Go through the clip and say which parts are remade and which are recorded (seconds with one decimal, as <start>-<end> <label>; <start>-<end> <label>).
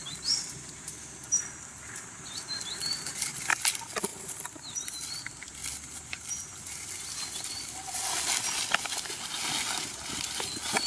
0.0-10.9 recorded